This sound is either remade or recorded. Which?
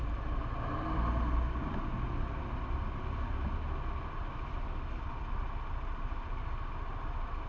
recorded